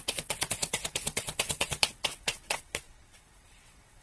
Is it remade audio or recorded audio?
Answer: remade